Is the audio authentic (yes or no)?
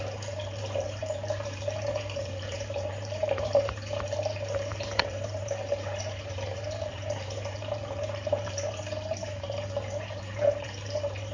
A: no